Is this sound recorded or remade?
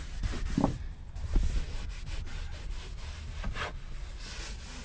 recorded